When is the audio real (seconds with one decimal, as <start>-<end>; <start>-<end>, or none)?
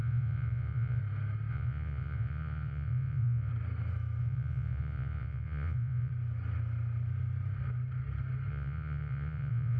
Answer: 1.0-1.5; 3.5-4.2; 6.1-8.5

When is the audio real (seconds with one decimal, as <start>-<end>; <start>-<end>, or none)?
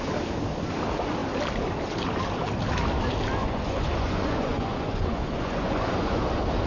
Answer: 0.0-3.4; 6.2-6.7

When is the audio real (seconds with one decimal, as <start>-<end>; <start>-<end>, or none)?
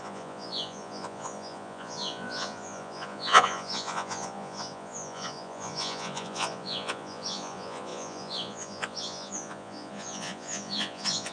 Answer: none